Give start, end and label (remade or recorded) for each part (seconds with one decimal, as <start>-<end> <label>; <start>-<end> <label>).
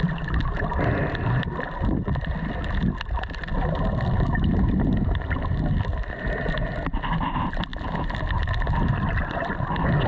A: 0.0-10.1 recorded